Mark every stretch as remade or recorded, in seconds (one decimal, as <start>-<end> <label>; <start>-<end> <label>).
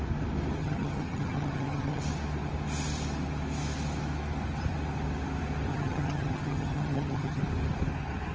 0.0-0.6 recorded; 0.6-2.0 remade; 2.0-5.7 recorded; 5.7-7.4 remade; 7.4-8.3 recorded